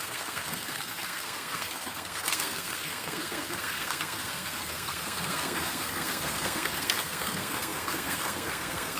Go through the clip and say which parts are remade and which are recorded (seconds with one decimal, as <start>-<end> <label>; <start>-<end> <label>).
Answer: 0.0-9.0 remade